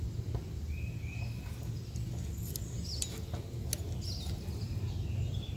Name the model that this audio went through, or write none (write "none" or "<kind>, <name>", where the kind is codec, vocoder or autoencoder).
none